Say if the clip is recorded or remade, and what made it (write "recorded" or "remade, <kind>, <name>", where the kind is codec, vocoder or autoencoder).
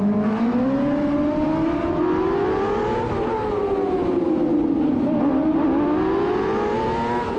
recorded